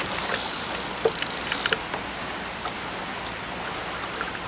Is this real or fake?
real